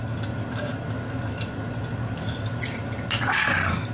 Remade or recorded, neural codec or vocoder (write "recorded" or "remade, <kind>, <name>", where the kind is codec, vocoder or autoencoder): recorded